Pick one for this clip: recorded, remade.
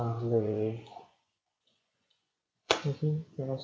remade